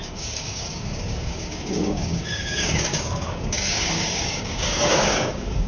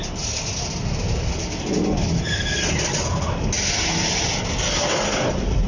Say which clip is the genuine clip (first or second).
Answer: second